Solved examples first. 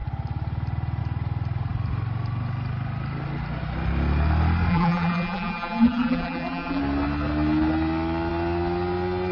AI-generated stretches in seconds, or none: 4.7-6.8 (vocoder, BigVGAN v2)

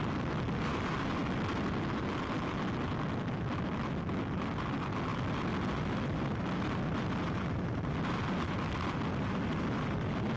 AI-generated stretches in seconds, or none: 0.0-1.2 (vocoder, BigVGAN v2); 3.2-5.1; 5.6-10.4

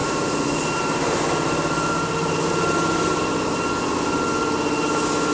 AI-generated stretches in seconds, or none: 0.0-3.2 (vocoder, BigVGAN v2)

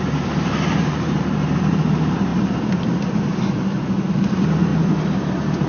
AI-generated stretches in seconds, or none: 0.0-2.3 (vocoder, BigVGAN v2); 4.1-4.7

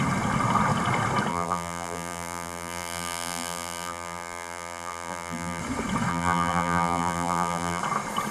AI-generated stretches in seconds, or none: 1.3-5.6 (vocoder, BigVGAN v2); 6.1-7.8

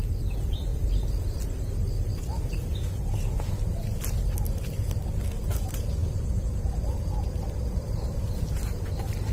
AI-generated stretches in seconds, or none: none

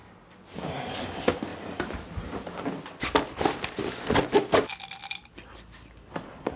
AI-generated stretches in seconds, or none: none

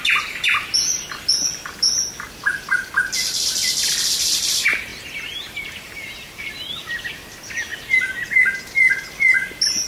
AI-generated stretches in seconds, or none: 4.9-6.5 (vocoder, BigVGAN v2)